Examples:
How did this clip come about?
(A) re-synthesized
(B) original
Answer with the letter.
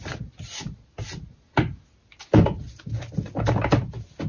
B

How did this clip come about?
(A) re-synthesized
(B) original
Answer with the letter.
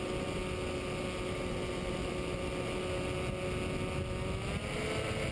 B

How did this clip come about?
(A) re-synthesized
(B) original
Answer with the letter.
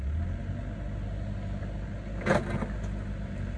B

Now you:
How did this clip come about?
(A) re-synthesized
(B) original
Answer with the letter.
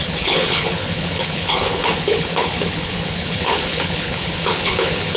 A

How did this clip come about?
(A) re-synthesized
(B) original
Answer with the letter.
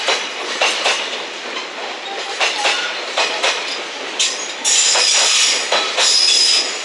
B